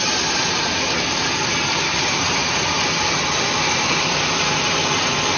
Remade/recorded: recorded